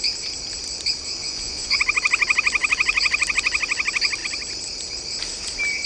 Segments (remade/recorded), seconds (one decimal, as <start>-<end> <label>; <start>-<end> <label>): 0.0-1.2 recorded; 1.2-1.8 remade; 1.8-5.9 recorded